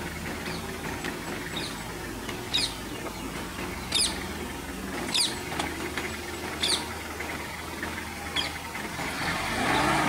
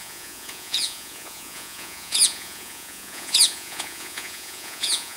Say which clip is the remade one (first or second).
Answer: second